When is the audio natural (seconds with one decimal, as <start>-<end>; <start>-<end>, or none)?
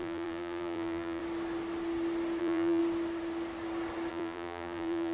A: 1.2-2.4; 2.8-4.1